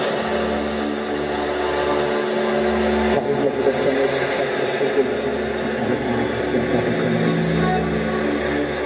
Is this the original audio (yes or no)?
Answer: yes